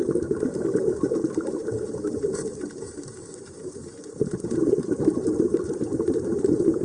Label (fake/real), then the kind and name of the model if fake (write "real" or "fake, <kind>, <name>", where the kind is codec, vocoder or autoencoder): fake, vocoder, BigVGAN v2